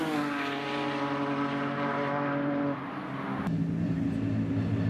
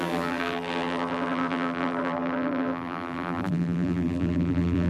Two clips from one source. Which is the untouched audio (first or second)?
first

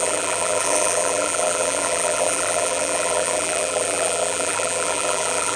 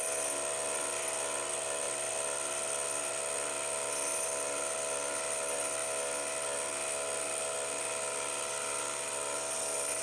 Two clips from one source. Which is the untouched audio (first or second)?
second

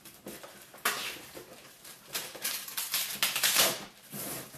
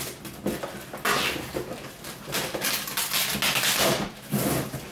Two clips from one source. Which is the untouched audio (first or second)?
second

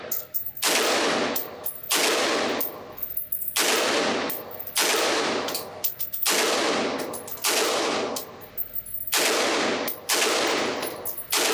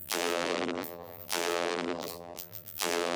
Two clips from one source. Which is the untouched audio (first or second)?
first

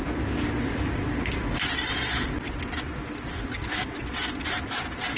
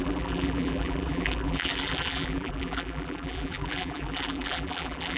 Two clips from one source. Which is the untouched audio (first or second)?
first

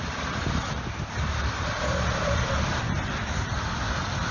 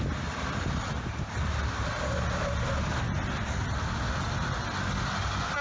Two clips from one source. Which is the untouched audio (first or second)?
second